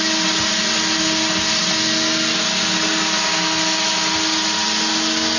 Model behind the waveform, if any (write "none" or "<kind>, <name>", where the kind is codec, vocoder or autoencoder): none